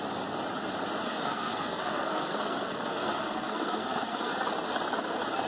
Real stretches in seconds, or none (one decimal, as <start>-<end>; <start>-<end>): 0.0-1.1; 4.3-5.5